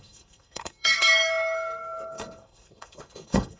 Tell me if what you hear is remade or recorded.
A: remade